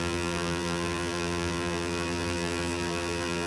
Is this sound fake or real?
fake